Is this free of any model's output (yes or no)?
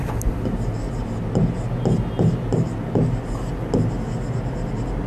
yes